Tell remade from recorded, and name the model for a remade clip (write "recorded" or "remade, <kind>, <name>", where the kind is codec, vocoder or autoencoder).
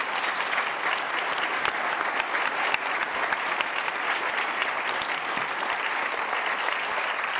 recorded